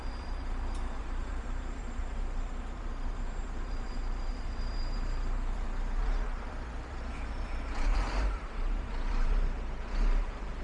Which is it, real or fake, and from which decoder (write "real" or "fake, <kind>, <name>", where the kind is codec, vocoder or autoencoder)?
fake, vocoder, BigVGAN v2